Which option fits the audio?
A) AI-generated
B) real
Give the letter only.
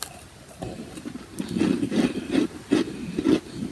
B